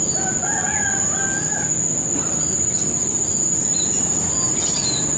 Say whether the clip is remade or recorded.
recorded